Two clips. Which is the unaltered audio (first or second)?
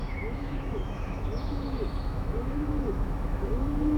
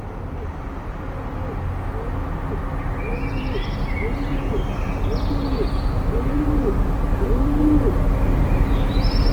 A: second